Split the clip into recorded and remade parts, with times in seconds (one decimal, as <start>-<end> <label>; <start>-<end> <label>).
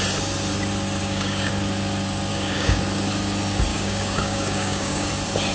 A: 0.0-1.0 recorded; 1.0-1.5 remade; 1.5-2.3 recorded; 2.3-2.8 remade; 2.8-3.7 recorded; 3.7-5.1 remade; 5.1-5.5 recorded